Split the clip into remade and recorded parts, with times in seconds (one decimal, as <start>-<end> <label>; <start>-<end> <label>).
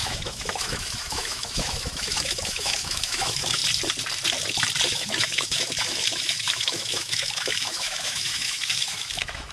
0.0-3.6 remade; 3.6-4.9 recorded; 4.9-9.5 remade